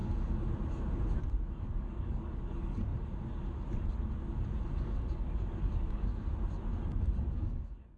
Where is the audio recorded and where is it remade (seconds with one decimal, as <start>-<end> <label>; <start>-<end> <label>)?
0.0-1.6 recorded; 1.6-2.9 remade; 2.9-4.8 recorded; 4.8-6.1 remade; 6.1-7.0 recorded; 7.0-8.0 remade